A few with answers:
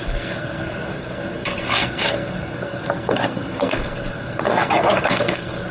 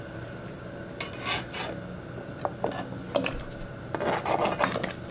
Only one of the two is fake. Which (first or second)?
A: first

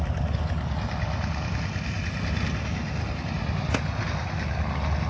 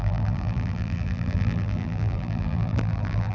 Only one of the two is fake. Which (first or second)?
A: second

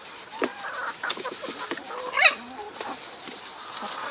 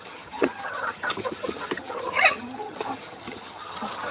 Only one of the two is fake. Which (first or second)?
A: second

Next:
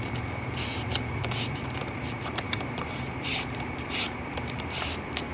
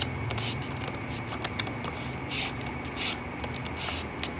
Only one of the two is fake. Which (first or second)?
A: first